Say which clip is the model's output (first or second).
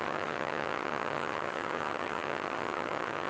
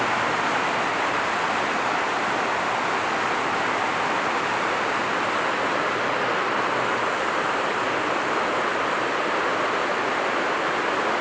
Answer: first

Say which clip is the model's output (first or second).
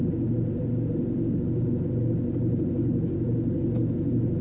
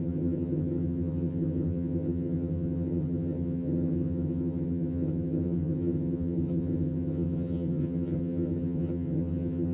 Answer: second